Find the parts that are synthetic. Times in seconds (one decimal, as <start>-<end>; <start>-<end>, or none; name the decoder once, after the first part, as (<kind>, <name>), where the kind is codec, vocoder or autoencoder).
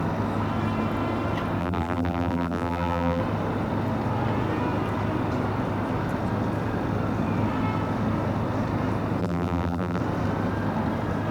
1.6-3.2 (vocoder, BigVGAN v2); 9.2-10.0